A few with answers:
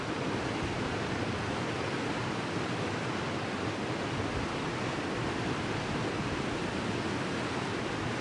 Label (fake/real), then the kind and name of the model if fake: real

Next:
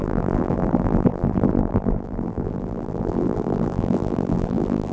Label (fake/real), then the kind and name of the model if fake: fake, vocoder, BigVGAN v2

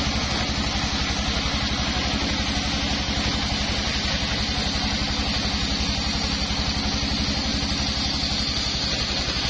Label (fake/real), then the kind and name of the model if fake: real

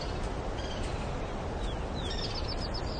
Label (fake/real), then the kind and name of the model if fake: real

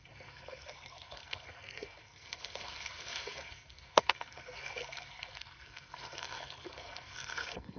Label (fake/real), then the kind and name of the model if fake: fake, codec, SNAC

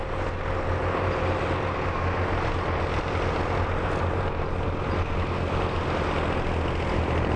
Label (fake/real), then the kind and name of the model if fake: real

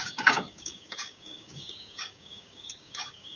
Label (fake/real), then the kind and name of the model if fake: fake, codec, DAC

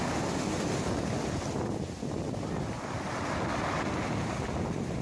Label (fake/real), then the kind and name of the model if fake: real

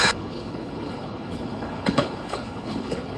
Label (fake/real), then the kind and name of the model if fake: fake, codec, HILCodec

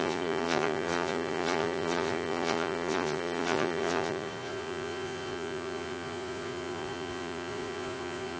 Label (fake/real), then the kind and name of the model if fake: fake, vocoder, Vocos